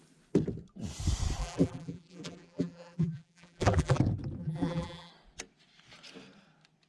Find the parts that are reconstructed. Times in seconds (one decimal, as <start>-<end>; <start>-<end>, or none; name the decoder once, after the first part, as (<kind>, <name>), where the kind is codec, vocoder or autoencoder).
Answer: 1.4-4.0 (vocoder, BigVGAN v2); 4.4-5.1